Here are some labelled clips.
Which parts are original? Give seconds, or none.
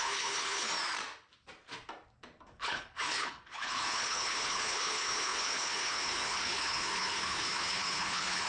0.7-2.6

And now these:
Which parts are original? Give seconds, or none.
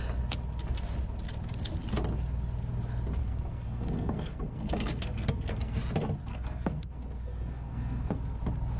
0.0-3.2; 5.8-6.3; 8.4-8.8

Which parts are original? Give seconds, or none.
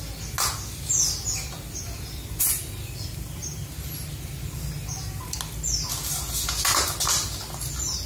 0.0-8.1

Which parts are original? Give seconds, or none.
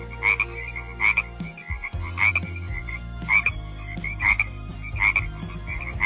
0.0-2.9; 4.7-6.1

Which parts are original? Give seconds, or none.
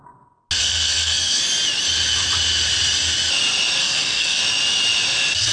0.0-0.6; 1.4-3.8; 4.4-5.5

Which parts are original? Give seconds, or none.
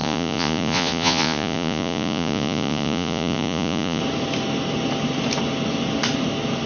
4.0-6.7